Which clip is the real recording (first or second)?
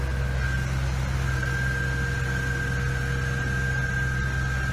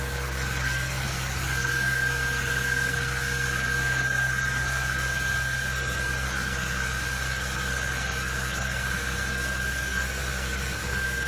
first